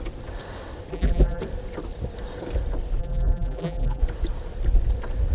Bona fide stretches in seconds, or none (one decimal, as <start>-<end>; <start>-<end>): 0.0-0.9; 1.4-3.0; 4.0-5.3